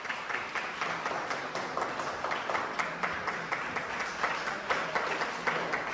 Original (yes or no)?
yes